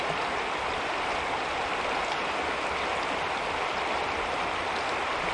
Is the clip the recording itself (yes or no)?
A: yes